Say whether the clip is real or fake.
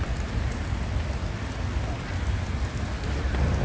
real